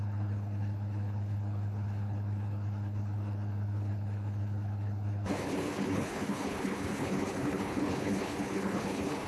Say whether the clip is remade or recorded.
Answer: remade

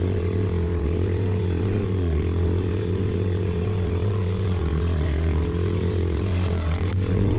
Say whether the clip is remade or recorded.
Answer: remade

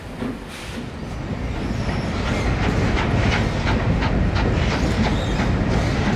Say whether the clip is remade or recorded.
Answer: recorded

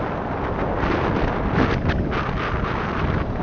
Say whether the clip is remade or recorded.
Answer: recorded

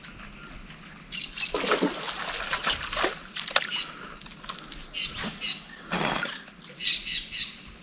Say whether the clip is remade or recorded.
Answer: recorded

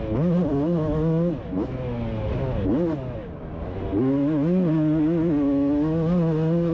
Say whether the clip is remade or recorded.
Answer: recorded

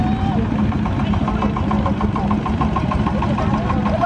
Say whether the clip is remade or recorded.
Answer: recorded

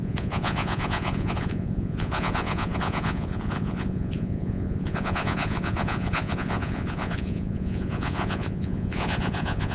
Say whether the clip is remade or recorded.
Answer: remade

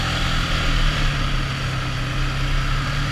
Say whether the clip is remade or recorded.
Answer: recorded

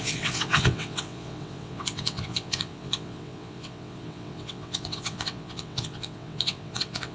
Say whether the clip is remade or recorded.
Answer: remade